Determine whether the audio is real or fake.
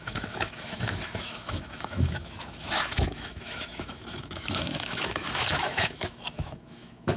fake